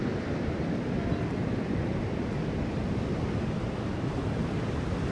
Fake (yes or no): yes